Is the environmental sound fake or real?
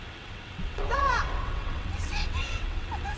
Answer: fake